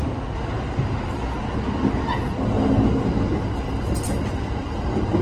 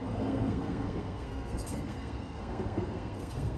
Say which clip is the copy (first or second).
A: second